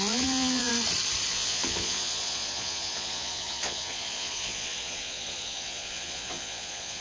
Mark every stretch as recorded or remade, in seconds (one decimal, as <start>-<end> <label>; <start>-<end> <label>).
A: 0.0-0.7 remade; 0.7-1.3 recorded; 1.3-7.0 remade